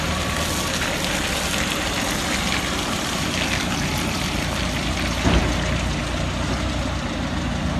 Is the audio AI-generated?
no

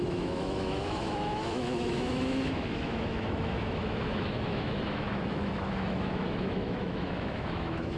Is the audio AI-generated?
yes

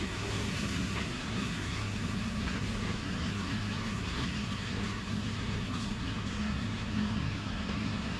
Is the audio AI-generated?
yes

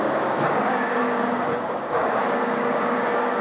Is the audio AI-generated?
yes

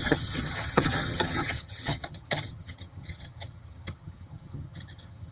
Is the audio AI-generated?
yes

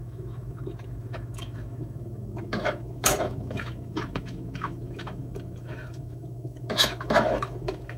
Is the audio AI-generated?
yes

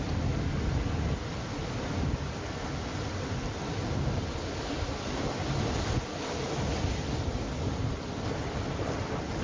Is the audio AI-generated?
no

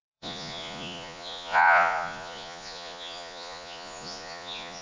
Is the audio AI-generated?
yes